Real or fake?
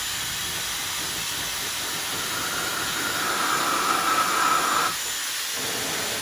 real